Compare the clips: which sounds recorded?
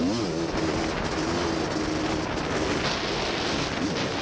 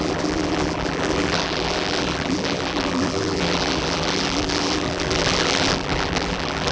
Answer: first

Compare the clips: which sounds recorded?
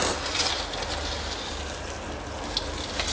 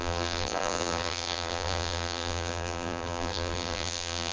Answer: first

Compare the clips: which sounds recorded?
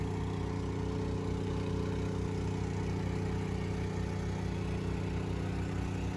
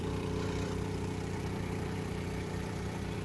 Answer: first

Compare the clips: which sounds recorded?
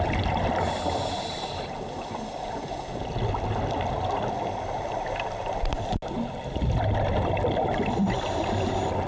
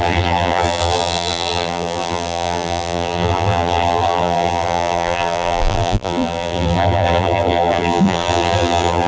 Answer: first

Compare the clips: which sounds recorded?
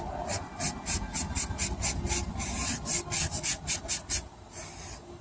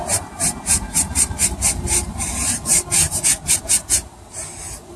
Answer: first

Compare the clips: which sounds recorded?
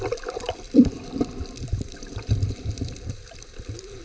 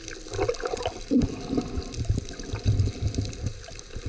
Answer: second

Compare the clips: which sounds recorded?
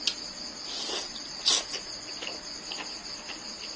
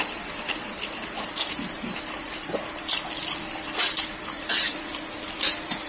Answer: first